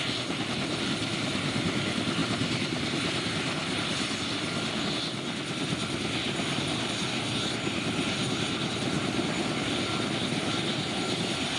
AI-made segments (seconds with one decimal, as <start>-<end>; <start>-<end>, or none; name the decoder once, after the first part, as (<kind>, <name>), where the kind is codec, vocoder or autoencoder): 6.2-6.9 (vocoder, BigVGAN v2)